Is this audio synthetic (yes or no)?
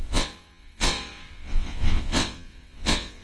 yes